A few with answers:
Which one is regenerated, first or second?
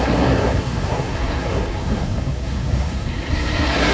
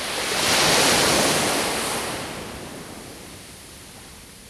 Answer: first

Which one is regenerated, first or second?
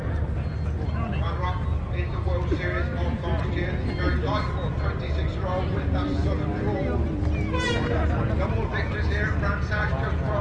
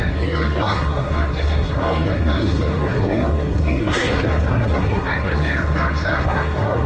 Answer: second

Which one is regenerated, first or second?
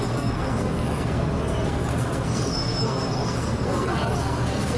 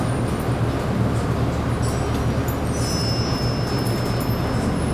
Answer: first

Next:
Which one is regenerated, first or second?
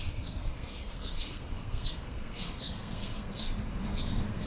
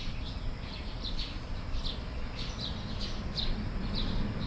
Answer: first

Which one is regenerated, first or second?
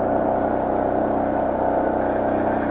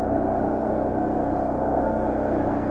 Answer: second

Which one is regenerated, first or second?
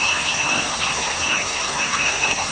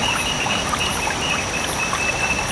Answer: first